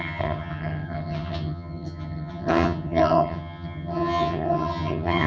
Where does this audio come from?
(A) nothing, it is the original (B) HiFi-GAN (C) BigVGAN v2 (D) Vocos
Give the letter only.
B